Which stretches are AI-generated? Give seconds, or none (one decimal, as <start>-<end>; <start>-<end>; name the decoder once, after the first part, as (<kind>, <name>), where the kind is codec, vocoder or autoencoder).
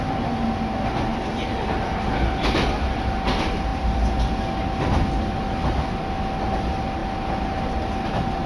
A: 1.1-3.3 (vocoder, BigVGAN v2); 3.7-4.4